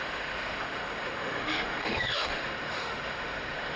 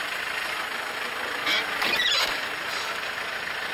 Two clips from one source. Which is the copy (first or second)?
first